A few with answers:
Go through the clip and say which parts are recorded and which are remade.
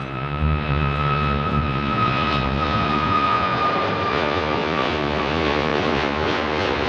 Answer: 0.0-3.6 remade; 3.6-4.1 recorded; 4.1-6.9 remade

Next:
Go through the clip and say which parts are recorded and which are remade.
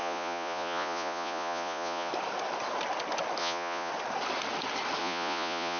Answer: 0.0-2.1 remade; 2.1-3.4 recorded; 3.4-3.9 remade; 3.9-5.0 recorded; 5.0-5.8 remade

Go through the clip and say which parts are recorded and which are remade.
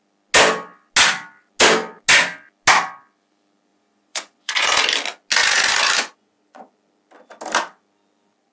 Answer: 0.0-3.7 recorded; 3.7-4.8 remade; 4.8-5.4 recorded; 5.4-6.7 remade; 6.7-8.5 recorded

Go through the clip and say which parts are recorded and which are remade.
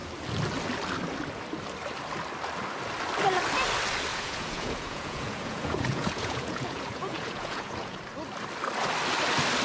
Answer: 0.0-4.1 recorded; 4.1-8.0 remade; 8.0-9.6 recorded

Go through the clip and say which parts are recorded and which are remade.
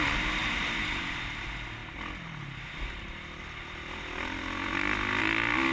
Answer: 0.0-5.7 recorded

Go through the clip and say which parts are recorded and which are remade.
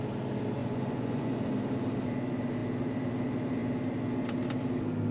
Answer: 0.0-0.6 recorded; 0.6-1.5 remade; 1.5-5.1 recorded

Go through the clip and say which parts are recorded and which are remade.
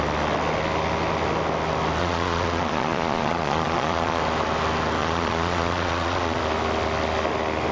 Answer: 0.0-2.0 recorded; 2.0-4.2 remade; 4.2-5.0 recorded; 5.0-6.4 remade; 6.4-7.7 recorded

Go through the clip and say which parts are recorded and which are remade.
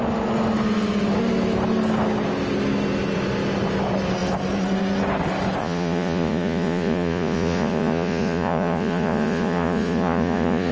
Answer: 0.0-5.6 recorded; 5.6-10.7 remade